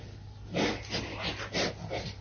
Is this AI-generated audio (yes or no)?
no